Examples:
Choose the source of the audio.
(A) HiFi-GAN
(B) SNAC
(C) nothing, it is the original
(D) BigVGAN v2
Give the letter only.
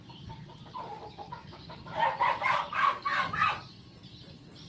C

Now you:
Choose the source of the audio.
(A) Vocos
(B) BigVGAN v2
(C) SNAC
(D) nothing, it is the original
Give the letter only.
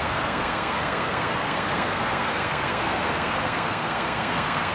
C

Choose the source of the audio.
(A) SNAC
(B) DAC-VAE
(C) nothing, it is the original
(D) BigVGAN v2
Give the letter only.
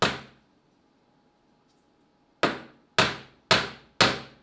C